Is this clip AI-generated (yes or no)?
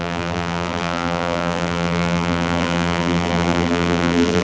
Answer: yes